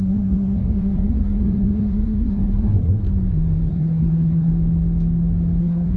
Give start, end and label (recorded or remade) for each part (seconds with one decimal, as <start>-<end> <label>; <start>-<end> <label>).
0.0-3.0 remade; 3.0-3.7 recorded; 3.7-4.5 remade; 4.5-5.6 recorded; 5.6-6.0 remade